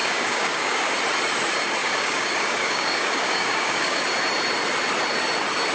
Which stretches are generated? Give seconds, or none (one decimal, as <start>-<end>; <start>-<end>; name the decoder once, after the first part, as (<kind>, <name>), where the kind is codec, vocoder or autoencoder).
0.0-0.9 (codec, DAC); 1.8-4.0